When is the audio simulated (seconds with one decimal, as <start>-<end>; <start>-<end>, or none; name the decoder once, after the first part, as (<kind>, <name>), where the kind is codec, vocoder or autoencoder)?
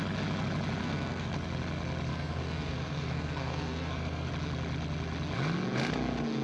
0.8-1.3 (codec, SNAC); 2.1-4.3